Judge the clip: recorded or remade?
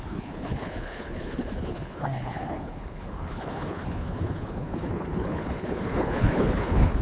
remade